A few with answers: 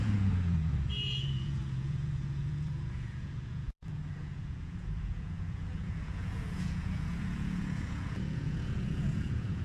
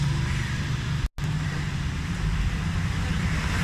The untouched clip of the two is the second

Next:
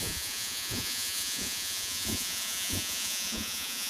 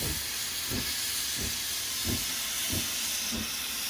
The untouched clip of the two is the second